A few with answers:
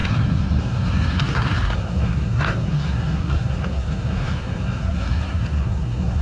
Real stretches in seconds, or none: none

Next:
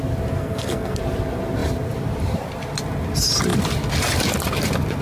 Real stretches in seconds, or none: 0.0-0.4; 1.0-5.0

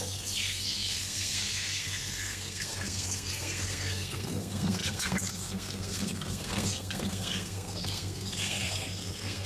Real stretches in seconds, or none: none

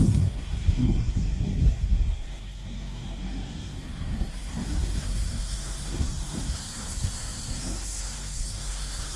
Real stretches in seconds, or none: none

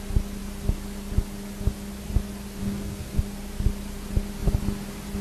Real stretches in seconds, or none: 0.0-2.6; 3.2-5.2

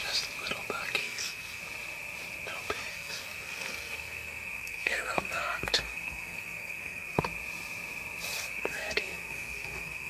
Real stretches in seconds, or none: 0.0-1.0; 1.6-2.9; 7.2-8.3

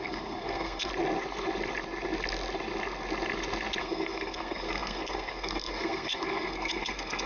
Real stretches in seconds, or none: 0.9-3.8